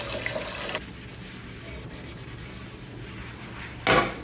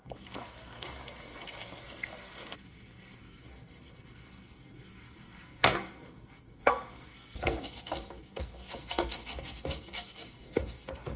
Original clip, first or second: first